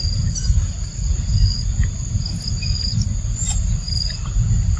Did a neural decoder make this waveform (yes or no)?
no